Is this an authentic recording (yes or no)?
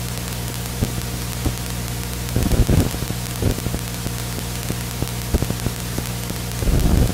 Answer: yes